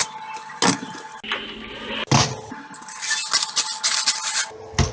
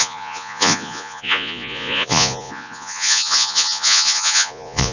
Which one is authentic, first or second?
first